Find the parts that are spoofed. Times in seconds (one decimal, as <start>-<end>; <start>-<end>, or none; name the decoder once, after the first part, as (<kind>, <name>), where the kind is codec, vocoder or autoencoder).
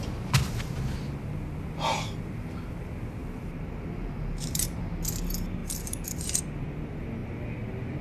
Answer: 3.2-4.9 (vocoder, BigVGAN v2); 5.6-6.4